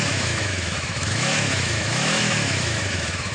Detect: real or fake fake